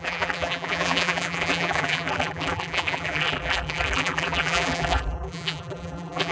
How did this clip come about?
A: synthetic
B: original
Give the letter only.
A